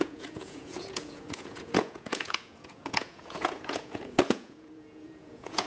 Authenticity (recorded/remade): remade